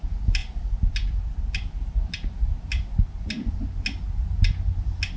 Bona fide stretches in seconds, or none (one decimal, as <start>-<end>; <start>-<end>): 0.0-5.2